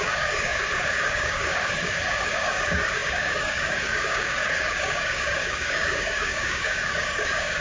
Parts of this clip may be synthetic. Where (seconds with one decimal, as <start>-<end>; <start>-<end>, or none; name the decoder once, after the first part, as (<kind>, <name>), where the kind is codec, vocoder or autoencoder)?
0.0-7.6 (codec, DAC)